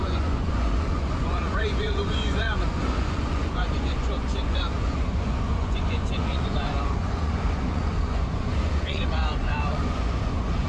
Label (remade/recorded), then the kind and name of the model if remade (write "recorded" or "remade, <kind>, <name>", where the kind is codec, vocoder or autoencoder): remade, vocoder, Vocos